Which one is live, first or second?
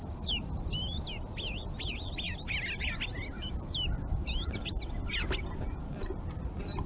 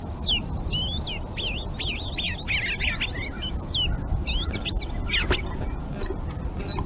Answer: second